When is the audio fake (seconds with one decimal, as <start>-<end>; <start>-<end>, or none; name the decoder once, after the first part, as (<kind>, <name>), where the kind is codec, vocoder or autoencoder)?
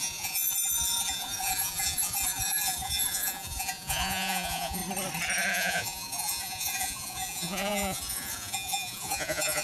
0.0-4.8 (vocoder, Vocos); 5.5-9.6